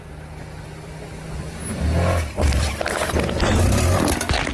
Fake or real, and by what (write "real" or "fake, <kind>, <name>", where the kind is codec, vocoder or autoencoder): real